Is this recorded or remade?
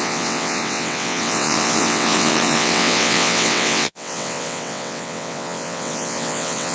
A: remade